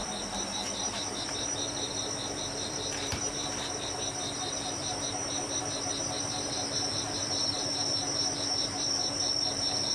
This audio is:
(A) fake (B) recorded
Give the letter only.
A